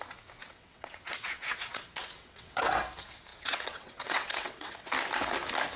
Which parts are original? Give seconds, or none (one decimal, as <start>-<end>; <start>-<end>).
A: 0.0-0.4; 2.7-3.3; 4.9-5.8